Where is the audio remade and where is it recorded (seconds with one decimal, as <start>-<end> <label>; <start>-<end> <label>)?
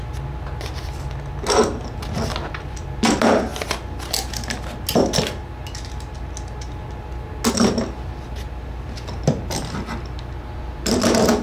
0.0-11.4 recorded